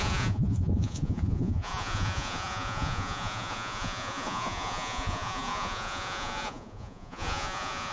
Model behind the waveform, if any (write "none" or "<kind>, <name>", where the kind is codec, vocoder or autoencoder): vocoder, Vocos